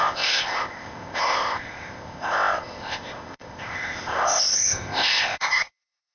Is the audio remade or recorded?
remade